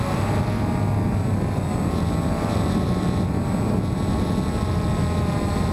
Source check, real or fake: real